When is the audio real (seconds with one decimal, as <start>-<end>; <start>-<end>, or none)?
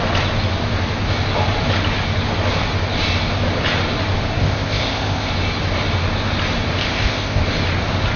0.0-4.4; 5.3-6.8; 7.4-8.2